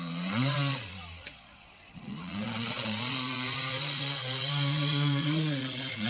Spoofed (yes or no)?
yes